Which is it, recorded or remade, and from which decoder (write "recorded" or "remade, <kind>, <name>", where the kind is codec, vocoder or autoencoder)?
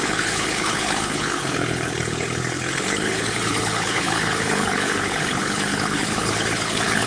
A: remade, codec, HILCodec